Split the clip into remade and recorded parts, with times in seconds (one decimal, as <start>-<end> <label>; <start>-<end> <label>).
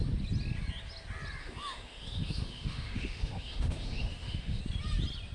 0.0-1.4 recorded; 1.4-4.6 remade; 4.6-5.3 recorded